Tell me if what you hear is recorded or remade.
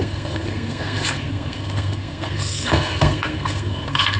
remade